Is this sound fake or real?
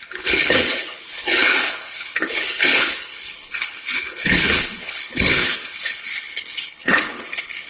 fake